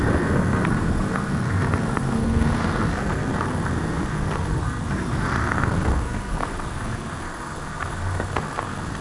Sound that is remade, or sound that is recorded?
remade